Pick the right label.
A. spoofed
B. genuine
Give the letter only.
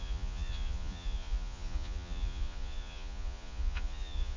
A